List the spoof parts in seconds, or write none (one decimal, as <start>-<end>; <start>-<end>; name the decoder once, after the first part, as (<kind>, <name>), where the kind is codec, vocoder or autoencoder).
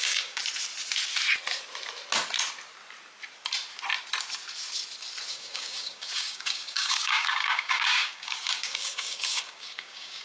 0.0-0.4 (codec, DAC); 5.3-10.2